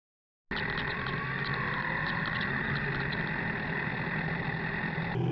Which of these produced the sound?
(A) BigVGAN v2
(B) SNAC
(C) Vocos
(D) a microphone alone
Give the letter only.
D